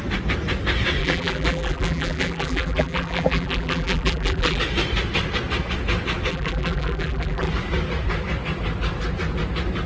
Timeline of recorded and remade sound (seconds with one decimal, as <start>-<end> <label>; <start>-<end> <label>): 0.0-1.0 recorded; 1.0-4.6 remade; 4.6-6.3 recorded; 6.3-7.5 remade; 7.5-9.9 recorded